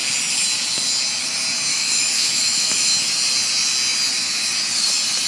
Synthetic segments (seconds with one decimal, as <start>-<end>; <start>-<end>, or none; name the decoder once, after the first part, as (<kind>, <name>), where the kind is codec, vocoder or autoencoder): 1.7-2.9 (autoencoder, DAC-VAE)